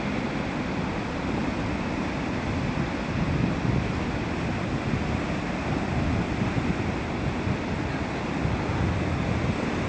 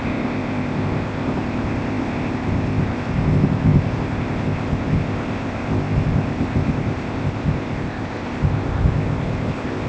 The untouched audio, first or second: first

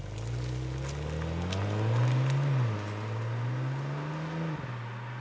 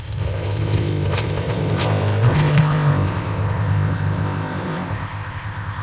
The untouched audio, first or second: first